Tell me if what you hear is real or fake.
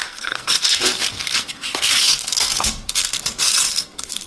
fake